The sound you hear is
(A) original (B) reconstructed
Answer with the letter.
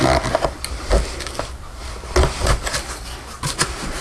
A